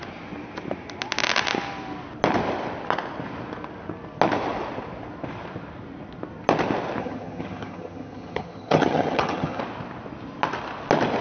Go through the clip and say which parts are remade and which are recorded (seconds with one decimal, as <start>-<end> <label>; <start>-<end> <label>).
0.0-7.0 recorded; 7.0-9.6 remade; 9.6-11.2 recorded